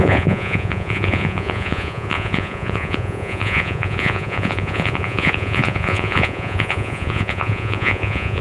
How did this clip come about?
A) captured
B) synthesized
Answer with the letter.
B